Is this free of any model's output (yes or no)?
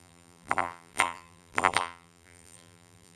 no